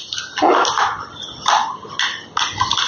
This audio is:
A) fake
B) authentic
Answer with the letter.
B